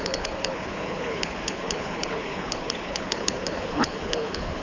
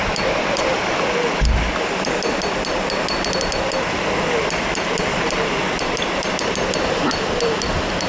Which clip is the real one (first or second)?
second